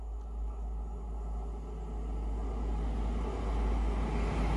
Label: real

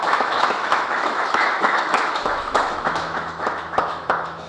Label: fake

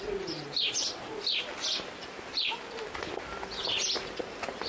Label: real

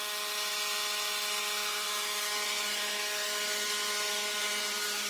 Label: real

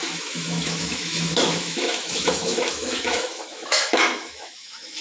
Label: fake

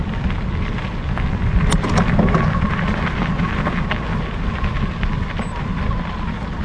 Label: real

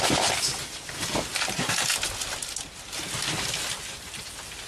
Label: real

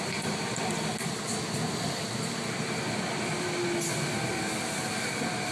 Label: real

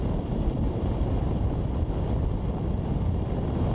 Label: real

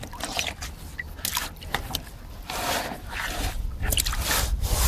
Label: real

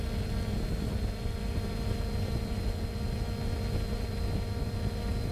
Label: real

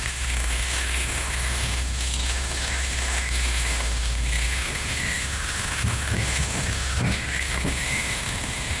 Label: fake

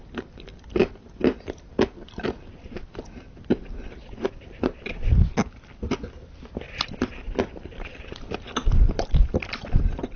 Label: real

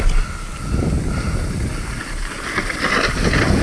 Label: real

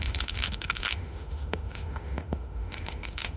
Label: fake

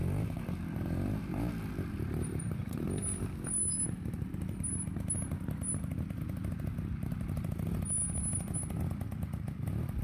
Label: real